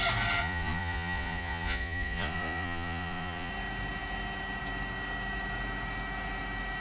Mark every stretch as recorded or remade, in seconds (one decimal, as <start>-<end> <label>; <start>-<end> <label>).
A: 0.0-0.4 recorded; 0.4-3.5 remade; 3.5-6.8 recorded